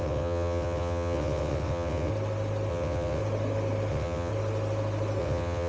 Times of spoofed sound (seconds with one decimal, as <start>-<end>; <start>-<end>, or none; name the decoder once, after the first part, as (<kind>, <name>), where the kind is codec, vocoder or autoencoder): 0.0-2.1 (vocoder, WaveNeXt); 2.7-3.2; 3.9-4.3; 5.2-5.7